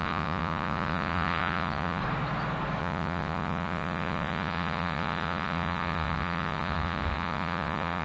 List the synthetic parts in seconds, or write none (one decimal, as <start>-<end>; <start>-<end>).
0.0-2.0; 2.8-8.0

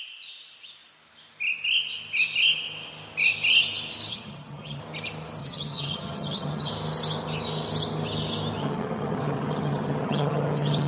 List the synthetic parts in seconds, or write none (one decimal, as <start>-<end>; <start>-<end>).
4.1-4.8; 5.4-6.7; 8.6-10.9

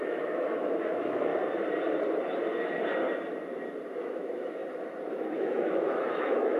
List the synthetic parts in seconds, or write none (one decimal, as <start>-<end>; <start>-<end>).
0.0-1.3; 4.0-4.6; 5.2-6.6